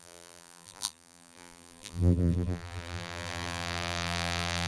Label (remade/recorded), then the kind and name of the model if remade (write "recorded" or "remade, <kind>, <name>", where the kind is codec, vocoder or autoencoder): remade, vocoder, BigVGAN v2